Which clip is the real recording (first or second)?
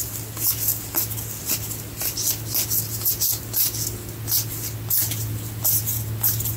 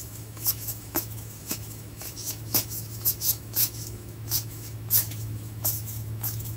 first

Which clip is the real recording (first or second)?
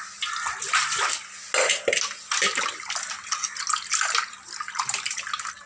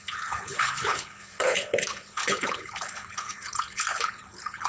first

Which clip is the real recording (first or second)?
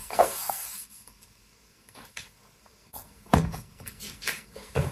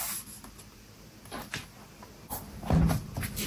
second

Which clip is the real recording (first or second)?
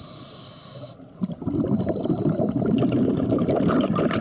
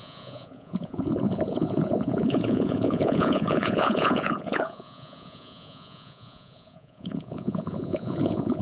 first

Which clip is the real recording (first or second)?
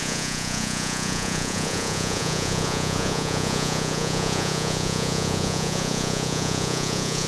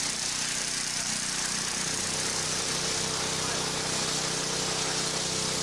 second